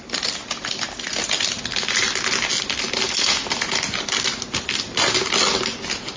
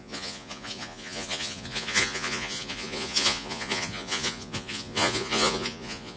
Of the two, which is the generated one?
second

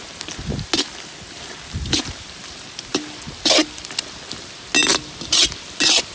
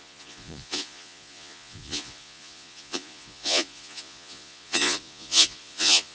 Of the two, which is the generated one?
second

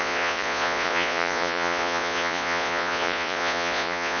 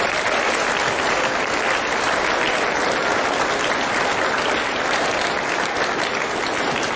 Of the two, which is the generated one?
first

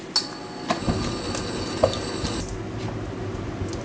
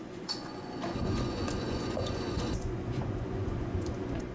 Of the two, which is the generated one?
second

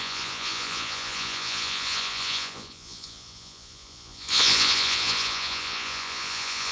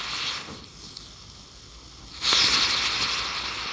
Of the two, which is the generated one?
first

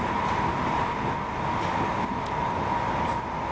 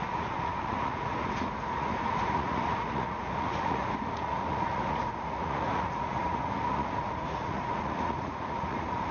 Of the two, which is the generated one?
second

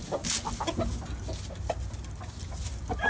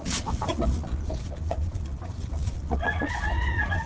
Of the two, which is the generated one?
second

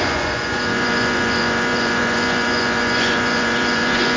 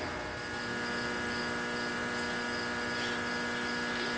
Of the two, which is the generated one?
first